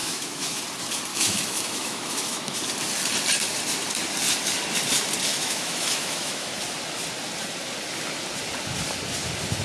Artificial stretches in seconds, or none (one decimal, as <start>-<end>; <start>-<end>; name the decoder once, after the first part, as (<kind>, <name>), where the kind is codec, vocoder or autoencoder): 0.0-0.6 (autoencoder, DAC-VAE); 1.1-2.6; 5.3-6.5